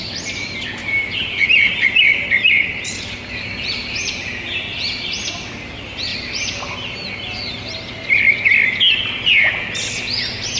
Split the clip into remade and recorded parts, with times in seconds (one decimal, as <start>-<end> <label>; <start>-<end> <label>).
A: 0.0-0.8 recorded; 0.8-4.1 remade; 4.1-10.6 recorded